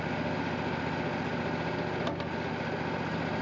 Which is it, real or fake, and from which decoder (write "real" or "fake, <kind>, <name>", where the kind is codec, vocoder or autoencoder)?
real